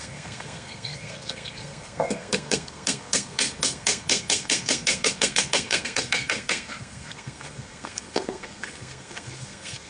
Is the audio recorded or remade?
remade